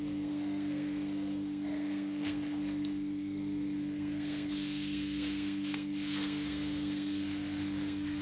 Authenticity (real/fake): fake